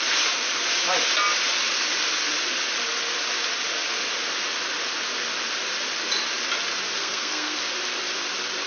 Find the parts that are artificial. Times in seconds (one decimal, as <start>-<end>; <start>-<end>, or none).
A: 7.0-7.6